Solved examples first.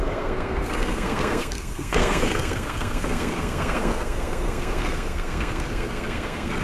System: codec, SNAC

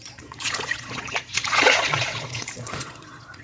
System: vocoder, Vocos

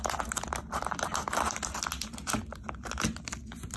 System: none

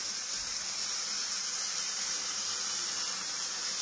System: none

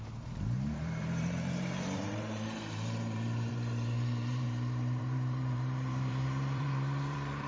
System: vocoder, BigVGAN v2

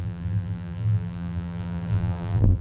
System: vocoder, BigVGAN v2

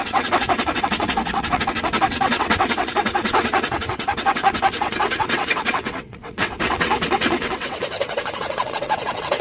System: vocoder, WaveNeXt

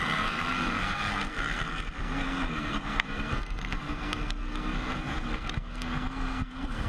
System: codec, SNAC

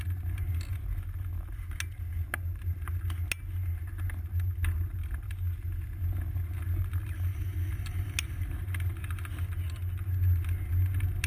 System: none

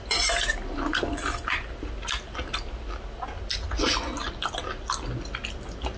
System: none